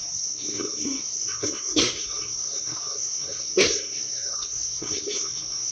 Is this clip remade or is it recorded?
remade